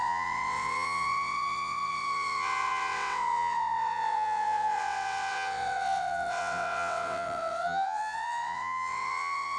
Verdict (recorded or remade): remade